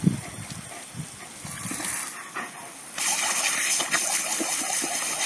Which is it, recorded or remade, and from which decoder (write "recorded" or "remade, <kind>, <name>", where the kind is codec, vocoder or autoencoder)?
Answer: recorded